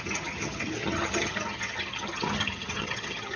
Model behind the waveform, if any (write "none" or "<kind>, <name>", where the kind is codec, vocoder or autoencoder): vocoder, HiFi-GAN